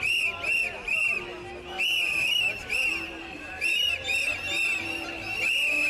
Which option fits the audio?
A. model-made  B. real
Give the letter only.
B